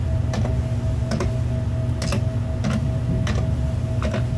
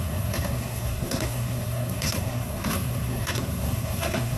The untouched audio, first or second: first